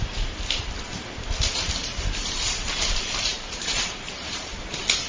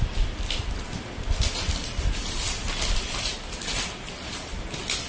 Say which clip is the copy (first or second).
first